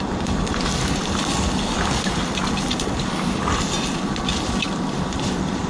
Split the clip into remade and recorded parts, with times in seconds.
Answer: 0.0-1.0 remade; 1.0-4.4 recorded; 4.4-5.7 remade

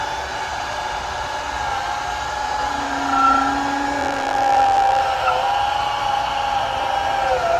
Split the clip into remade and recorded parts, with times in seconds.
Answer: 0.0-4.0 recorded; 4.0-5.0 remade; 5.0-7.6 recorded